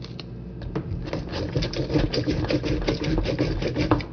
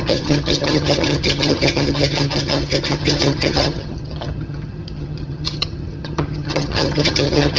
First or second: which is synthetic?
second